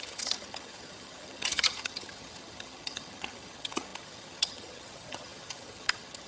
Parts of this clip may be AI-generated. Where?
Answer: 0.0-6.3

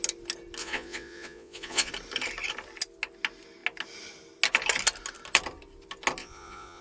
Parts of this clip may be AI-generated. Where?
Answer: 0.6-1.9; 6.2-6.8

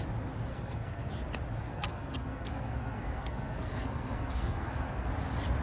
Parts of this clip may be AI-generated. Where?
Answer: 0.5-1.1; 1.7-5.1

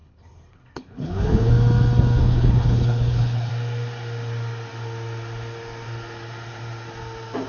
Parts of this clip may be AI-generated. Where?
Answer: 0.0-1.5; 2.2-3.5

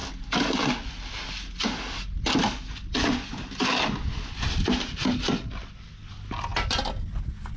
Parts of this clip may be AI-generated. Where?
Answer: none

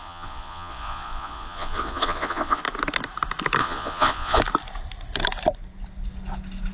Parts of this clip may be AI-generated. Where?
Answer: 0.0-2.6; 3.6-4.4